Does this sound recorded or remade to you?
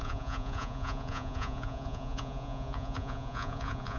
remade